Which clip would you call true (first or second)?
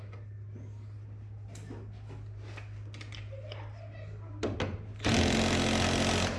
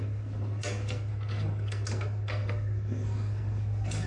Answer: first